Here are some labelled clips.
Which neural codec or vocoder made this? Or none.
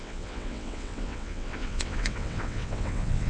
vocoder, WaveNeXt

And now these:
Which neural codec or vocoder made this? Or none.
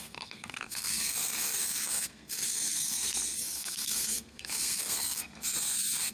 codec, SNAC